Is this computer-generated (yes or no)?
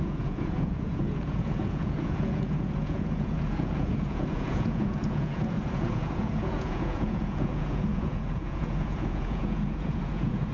yes